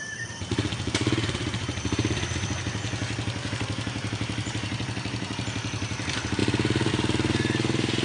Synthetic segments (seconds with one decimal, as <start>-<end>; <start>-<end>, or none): 0.0-2.8; 3.5-8.0